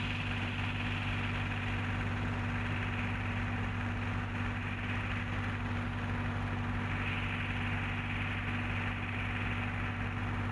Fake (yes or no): no